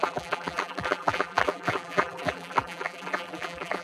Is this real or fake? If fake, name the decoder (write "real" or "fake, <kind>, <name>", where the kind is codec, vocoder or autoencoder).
fake, vocoder, BigVGAN v2